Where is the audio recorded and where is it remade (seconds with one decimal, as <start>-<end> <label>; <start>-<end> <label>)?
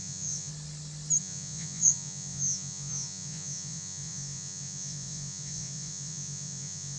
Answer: 0.0-0.5 remade; 0.5-1.2 recorded; 1.2-7.0 remade